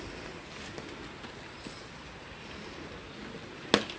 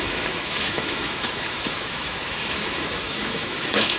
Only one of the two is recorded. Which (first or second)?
first